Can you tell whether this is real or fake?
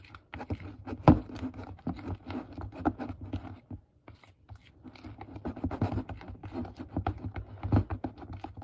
real